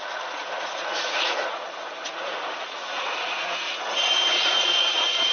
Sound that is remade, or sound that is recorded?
remade